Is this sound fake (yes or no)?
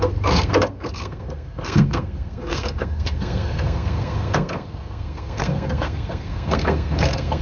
yes